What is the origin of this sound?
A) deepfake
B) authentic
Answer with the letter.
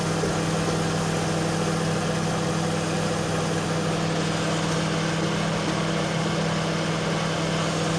B